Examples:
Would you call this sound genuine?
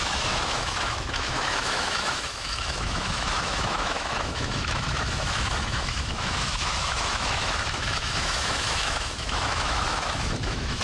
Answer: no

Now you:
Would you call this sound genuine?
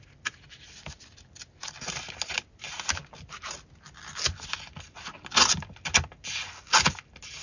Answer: yes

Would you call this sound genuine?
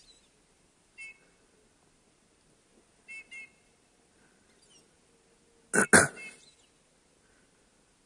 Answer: yes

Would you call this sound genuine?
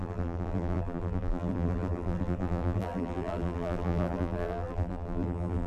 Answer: no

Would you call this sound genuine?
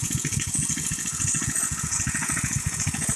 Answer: no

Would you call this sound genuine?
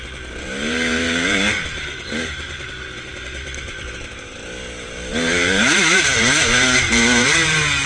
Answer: no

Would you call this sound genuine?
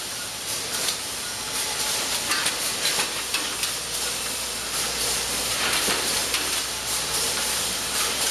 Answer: no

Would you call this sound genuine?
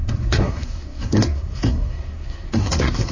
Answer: no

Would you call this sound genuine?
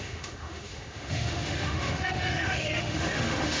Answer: no